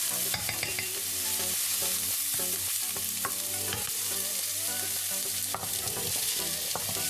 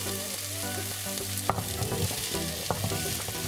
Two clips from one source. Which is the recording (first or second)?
second